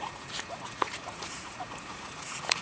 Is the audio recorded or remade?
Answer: remade